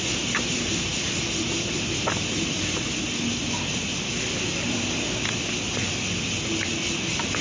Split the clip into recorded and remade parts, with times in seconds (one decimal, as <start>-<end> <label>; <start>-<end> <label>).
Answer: 0.0-7.4 recorded